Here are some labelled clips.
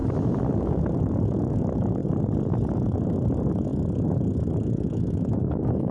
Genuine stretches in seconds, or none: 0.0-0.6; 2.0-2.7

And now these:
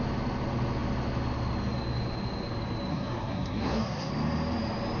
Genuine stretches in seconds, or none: 0.0-2.9; 4.1-5.0

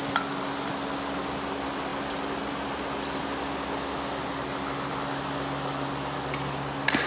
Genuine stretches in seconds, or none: 0.0-7.1

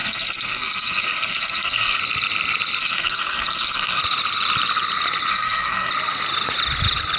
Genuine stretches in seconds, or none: 2.0-2.8; 4.0-5.3; 5.9-7.2

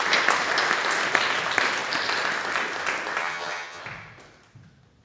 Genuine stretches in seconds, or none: 0.0-3.2; 3.8-5.0

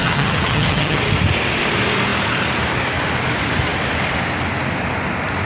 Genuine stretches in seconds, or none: 1.0-5.4

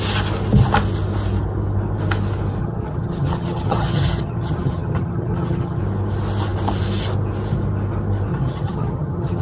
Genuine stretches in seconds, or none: 0.0-2.6; 5.8-8.3

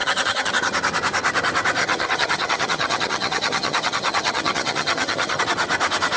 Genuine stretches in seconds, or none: 0.5-1.8; 5.4-6.2